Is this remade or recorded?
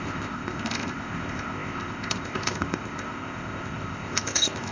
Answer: remade